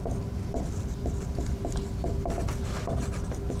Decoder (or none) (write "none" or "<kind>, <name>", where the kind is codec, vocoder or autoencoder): none